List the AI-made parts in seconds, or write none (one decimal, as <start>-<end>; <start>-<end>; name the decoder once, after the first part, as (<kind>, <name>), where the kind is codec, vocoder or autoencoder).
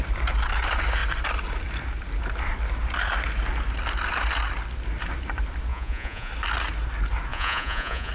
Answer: 5.7-6.3 (vocoder, Vocos); 7.3-8.1